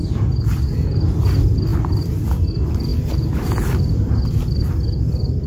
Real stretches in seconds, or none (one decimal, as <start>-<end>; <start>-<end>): 0.0-5.5